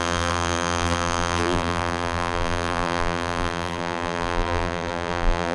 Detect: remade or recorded remade